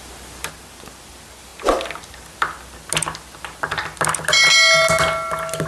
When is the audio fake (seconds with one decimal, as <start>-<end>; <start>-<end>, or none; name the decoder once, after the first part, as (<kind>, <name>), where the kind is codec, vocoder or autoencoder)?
none